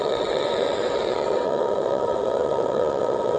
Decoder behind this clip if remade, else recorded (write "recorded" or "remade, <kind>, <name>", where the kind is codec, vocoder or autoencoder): remade, vocoder, WaveNeXt